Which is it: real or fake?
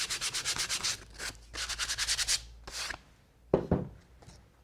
real